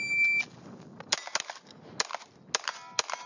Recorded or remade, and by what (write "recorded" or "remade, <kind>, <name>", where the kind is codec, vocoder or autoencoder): recorded